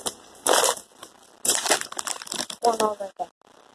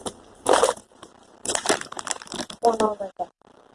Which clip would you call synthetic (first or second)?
second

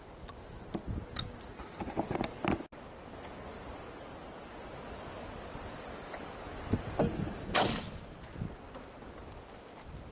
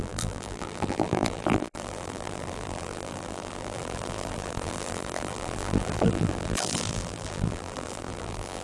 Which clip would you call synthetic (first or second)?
second